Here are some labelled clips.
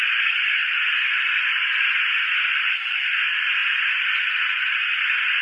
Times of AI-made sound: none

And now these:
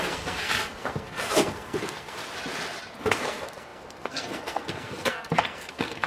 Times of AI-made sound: 0.0-2.2 (codec, SNAC); 3.0-6.1

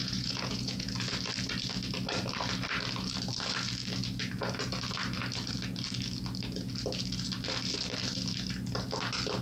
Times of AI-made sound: 0.0-0.9 (vocoder, Vocos)

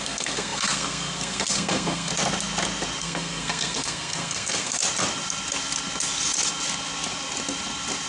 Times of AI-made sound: 0.0-2.1 (codec, SNAC); 3.0-4.8